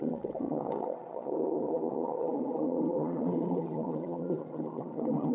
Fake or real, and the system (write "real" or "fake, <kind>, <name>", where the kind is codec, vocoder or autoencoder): fake, vocoder, Vocos